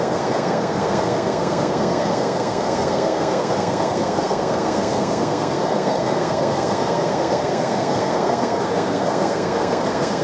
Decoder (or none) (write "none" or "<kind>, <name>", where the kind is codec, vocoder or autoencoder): codec, SNAC